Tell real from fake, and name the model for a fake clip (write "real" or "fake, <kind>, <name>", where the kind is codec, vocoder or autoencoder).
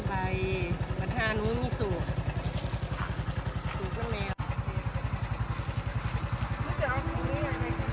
real